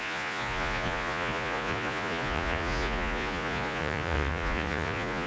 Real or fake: fake